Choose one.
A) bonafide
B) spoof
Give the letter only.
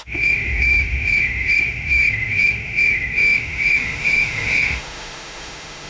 B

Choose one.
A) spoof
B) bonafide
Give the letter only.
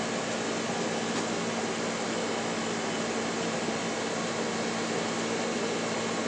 B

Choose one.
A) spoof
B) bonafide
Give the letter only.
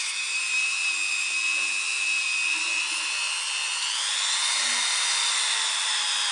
A